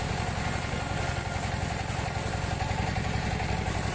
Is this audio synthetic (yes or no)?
no